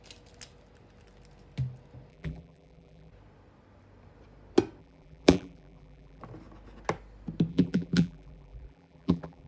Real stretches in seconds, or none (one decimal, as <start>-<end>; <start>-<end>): 0.0-2.1; 3.1-4.8; 6.2-7.5